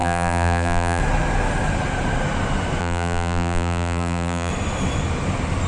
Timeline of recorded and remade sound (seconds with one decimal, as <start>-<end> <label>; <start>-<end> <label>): 0.0-1.0 remade; 1.0-2.8 recorded; 2.8-4.5 remade; 4.5-5.7 recorded